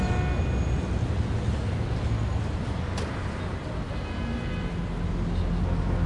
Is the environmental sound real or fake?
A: real